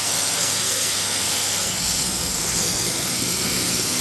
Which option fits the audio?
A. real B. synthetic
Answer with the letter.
B